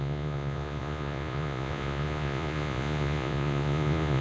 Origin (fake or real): fake